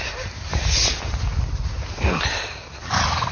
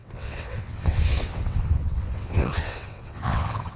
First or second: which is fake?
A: second